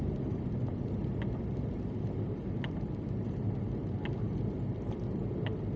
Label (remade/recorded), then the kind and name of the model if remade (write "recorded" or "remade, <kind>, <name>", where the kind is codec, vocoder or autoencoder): recorded